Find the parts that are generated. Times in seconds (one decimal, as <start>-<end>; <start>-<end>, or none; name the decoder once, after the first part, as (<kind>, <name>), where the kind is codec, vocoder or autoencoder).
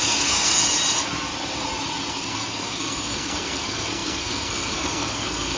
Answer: 0.0-0.6 (codec, SNAC); 2.1-5.6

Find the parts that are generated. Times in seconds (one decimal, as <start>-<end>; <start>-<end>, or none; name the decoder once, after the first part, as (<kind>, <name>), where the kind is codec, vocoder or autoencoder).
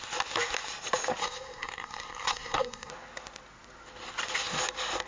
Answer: 1.2-2.9 (codec, SNAC)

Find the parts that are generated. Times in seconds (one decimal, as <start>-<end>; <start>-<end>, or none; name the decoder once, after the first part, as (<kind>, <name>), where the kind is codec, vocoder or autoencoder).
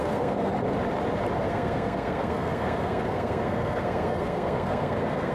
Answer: 0.0-0.5 (codec, SNAC); 1.4-5.3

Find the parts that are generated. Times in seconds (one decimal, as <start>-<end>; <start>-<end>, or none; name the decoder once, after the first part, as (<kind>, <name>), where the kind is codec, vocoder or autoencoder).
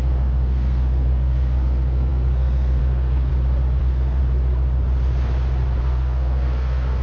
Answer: 0.0-3.3 (codec, SNAC); 3.8-4.2; 5.8-7.0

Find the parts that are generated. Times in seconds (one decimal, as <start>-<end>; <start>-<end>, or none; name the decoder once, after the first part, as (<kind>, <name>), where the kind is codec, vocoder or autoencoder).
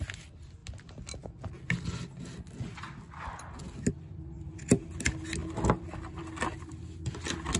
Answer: none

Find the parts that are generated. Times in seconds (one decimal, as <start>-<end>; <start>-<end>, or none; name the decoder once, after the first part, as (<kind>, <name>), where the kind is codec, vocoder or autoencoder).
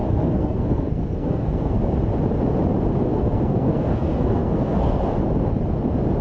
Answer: 0.0-1.8 (codec, SNAC); 3.1-5.0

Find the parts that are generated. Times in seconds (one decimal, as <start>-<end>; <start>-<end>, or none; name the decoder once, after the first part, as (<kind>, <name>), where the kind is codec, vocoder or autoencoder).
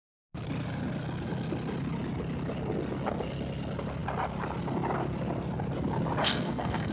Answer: 6.2-6.9 (codec, SNAC)